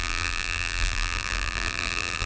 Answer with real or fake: fake